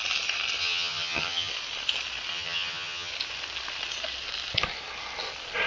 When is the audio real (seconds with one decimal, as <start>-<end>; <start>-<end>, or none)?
0.0-0.6; 1.5-2.3; 3.1-5.7